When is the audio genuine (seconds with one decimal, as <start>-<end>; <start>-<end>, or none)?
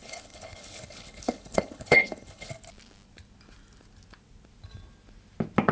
2.5-5.7